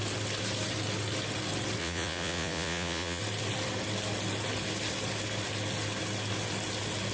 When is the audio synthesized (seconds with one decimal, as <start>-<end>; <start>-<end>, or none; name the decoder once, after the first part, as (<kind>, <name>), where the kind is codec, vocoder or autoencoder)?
1.8-3.2 (vocoder, Vocos)